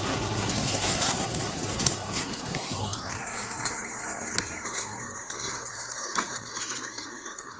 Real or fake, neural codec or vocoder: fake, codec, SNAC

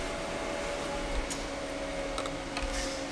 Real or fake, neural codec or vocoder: real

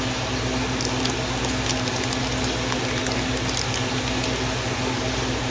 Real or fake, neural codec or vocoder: real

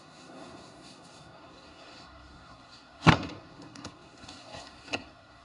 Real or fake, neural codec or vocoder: fake, codec, SNAC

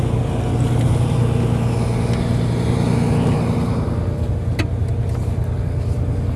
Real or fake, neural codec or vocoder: real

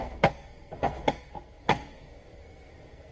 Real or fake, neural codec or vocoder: fake, codec, SNAC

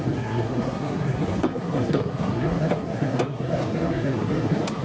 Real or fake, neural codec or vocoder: fake, codec, SNAC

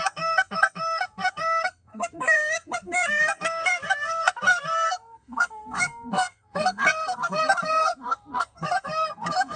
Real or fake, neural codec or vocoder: fake, codec, SNAC